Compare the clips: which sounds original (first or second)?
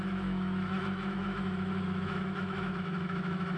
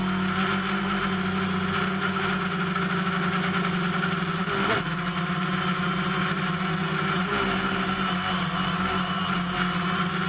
second